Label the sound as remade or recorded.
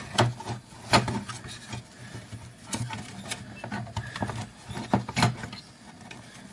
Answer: recorded